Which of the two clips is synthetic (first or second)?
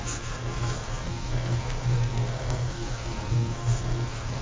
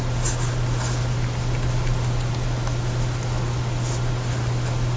first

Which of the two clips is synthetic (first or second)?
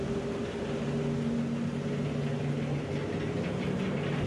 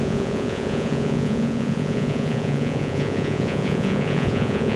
second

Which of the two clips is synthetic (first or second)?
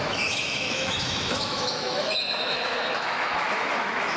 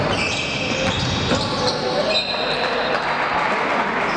first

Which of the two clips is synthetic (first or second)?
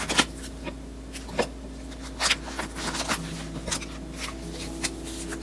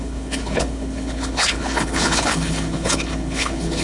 second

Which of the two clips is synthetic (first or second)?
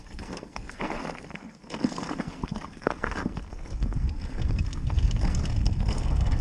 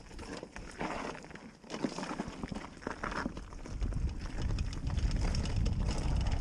first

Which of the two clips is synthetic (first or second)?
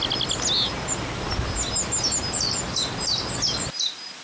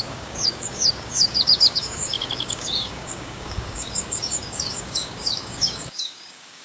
second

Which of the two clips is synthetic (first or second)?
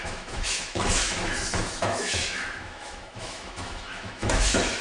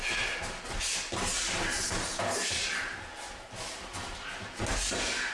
first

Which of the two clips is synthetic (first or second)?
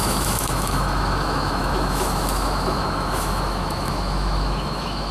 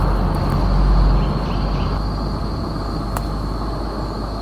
first